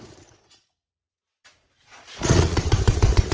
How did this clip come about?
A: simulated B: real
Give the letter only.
A